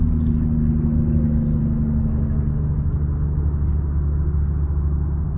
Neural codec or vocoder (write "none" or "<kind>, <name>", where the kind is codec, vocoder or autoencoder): none